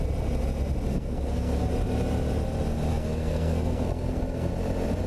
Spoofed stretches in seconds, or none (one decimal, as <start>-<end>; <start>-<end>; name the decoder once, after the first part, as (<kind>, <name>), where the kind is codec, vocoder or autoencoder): 0.9-1.7 (codec, SNAC); 2.9-4.5